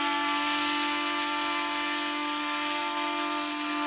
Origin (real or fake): real